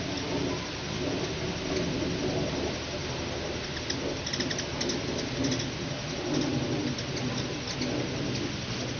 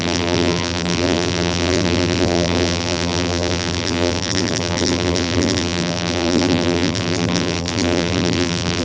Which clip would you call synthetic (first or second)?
second